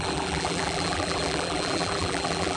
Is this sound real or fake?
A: fake